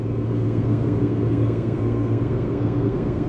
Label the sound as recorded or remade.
remade